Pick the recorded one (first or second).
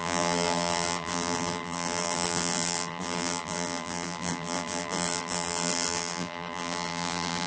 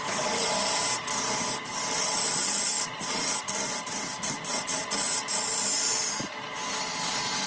second